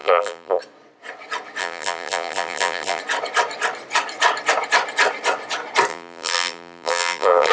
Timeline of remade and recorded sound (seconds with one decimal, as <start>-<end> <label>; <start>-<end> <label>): 0.0-0.6 remade; 0.6-1.6 recorded; 1.6-3.0 remade; 3.0-5.9 recorded; 5.9-7.5 remade